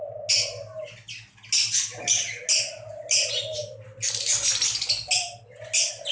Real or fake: real